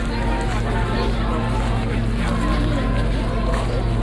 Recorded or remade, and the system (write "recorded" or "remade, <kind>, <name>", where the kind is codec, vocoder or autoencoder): recorded